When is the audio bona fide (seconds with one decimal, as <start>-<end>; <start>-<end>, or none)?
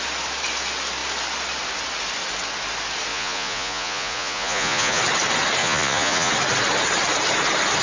0.0-3.1; 5.0-5.6; 6.3-7.8